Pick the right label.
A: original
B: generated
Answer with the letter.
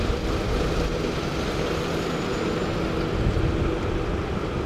A